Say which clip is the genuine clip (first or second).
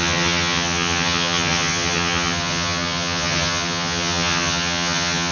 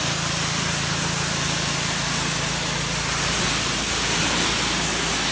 second